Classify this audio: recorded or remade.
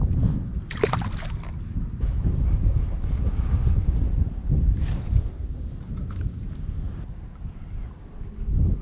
recorded